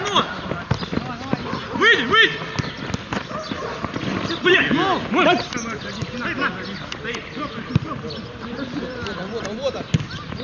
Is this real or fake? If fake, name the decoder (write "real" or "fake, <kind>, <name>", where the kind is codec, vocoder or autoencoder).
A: real